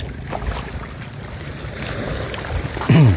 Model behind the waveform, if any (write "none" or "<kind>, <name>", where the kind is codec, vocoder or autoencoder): none